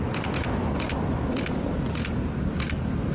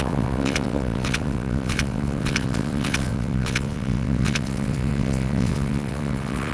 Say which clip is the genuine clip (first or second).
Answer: first